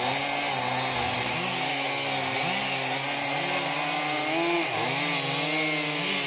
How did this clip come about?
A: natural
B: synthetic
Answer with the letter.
A